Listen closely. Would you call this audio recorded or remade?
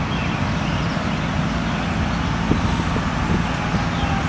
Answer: recorded